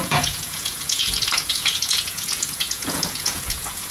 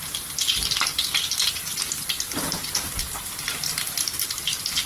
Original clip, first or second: second